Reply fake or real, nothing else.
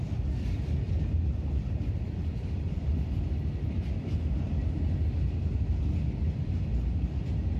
real